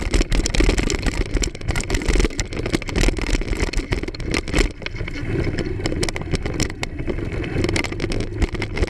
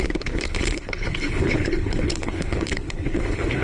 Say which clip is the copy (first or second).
second